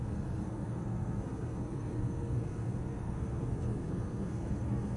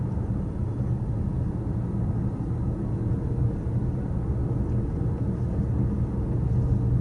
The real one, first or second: second